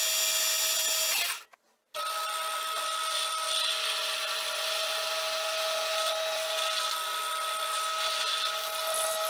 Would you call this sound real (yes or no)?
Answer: yes